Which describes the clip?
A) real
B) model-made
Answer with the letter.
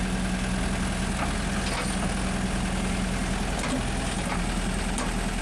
A